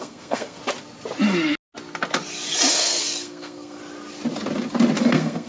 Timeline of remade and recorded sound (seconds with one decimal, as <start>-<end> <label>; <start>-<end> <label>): 0.0-0.6 remade; 0.6-2.7 recorded; 2.7-3.8 remade; 3.8-5.0 recorded; 5.0-5.5 remade